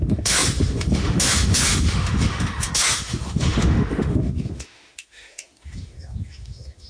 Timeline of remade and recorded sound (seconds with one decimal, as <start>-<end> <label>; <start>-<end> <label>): 0.0-6.9 remade